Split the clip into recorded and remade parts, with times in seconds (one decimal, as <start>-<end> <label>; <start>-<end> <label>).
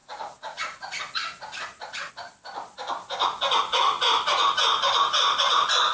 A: 0.0-2.1 remade; 2.1-5.9 recorded